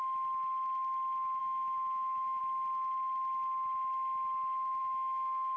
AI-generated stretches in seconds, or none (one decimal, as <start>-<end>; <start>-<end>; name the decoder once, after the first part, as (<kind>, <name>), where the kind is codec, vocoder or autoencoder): 1.4-2.4 (autoencoder, DAC-VAE); 4.8-5.6